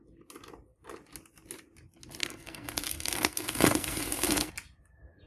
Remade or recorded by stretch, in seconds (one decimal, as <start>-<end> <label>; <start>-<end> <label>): 0.0-2.2 recorded; 2.2-4.5 remade; 4.5-5.3 recorded